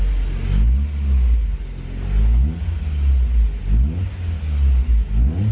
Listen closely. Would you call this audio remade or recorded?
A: recorded